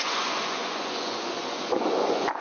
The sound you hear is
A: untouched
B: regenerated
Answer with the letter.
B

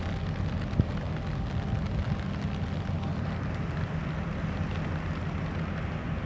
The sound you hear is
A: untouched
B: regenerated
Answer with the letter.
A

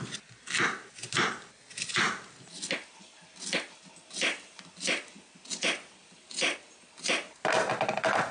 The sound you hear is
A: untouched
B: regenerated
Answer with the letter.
A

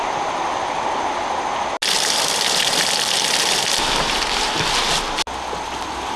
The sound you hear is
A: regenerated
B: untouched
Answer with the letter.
B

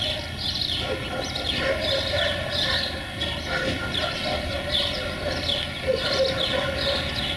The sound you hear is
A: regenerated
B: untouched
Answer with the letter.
B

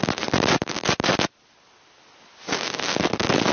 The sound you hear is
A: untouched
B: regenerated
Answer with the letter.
A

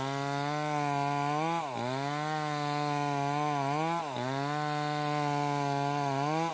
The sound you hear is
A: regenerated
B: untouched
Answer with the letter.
B